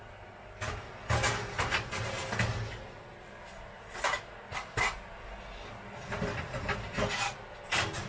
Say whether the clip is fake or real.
real